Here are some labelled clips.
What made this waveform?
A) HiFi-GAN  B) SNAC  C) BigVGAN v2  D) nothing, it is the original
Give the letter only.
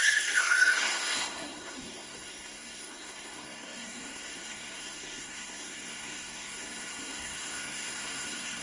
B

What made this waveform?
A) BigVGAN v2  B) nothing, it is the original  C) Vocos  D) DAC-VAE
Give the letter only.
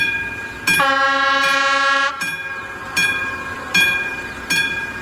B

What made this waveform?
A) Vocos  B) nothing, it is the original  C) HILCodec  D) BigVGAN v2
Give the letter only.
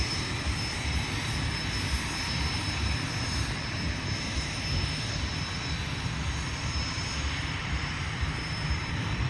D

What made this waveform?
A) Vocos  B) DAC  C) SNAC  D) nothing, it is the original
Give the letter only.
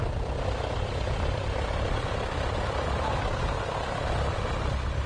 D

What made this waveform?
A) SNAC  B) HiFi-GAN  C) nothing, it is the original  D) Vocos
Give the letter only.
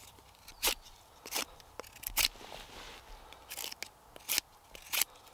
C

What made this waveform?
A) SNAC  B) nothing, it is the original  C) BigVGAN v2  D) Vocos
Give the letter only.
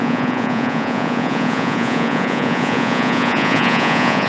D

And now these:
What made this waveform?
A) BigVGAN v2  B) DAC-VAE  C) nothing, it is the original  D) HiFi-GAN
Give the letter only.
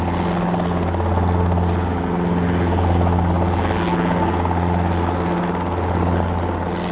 C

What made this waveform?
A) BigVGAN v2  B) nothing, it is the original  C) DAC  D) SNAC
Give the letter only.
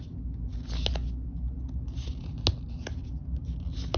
B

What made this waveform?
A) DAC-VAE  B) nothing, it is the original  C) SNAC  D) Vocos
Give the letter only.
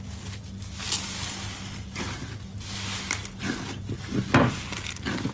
B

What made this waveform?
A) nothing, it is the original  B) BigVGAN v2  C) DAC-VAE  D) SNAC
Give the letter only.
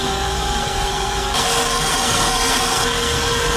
D